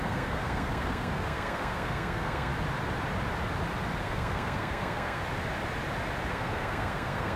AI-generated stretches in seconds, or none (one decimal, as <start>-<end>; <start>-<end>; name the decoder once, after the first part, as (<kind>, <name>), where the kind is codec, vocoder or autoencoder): 0.0-2.5 (codec, SNAC); 4.0-5.2; 6.3-7.4